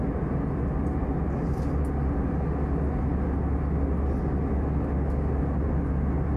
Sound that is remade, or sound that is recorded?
recorded